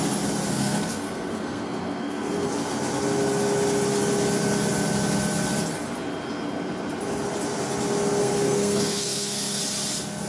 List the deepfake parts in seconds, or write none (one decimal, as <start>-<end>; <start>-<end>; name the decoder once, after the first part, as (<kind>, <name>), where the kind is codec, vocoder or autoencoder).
0.5-2.5 (codec, SNAC); 8.2-9.6

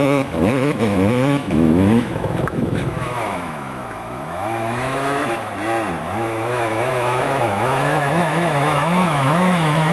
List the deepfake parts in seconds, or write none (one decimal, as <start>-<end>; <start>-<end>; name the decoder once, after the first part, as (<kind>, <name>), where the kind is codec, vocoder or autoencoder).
0.0-5.5 (autoencoder, DAC-VAE); 6.0-9.9

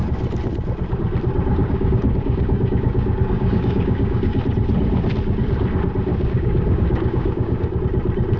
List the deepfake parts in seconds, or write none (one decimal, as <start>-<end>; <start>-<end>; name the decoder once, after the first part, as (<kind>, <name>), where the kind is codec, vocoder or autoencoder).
1.5-4.4 (codec, DAC); 6.1-7.8

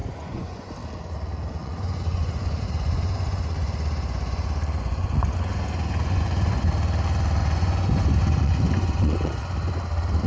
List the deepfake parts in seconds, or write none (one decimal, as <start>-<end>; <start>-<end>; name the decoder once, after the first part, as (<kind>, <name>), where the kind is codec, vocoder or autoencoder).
0.0-0.7 (vocoder, Vocos); 1.6-6.7; 7.4-9.4

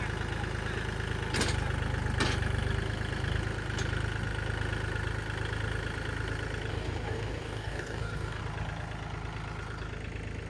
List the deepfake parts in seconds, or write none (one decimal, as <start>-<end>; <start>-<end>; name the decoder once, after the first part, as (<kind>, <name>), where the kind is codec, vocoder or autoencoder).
6.7-8.4 (codec, DAC)